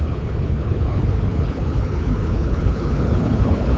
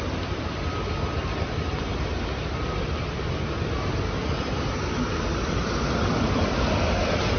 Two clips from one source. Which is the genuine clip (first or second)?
second